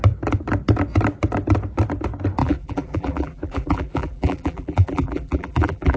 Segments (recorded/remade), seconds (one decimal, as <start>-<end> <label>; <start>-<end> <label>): 0.0-2.4 recorded; 2.4-6.0 remade